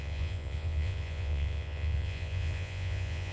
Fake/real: fake